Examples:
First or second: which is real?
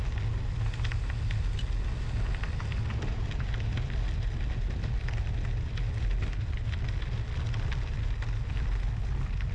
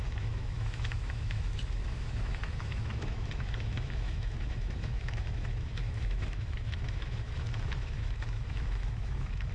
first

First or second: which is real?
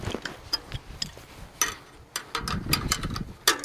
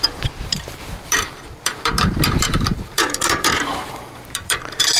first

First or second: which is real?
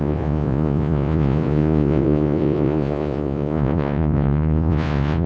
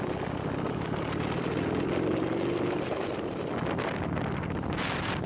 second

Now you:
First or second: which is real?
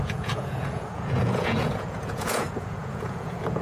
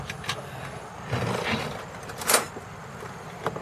second